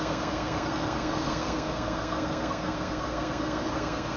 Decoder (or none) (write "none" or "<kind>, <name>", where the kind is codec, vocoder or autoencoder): codec, SNAC